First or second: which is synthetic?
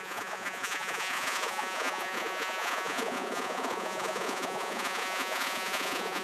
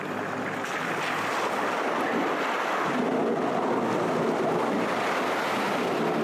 first